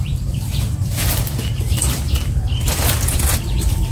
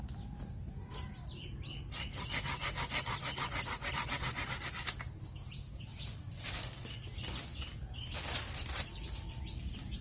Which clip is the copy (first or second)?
first